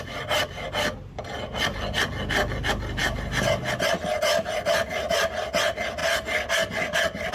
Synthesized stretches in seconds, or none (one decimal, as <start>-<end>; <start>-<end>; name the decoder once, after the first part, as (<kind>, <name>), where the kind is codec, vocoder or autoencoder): none